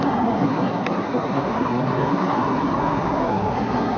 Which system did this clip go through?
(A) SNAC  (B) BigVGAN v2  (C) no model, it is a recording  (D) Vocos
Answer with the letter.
A